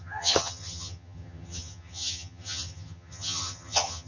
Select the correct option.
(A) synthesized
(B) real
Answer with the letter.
A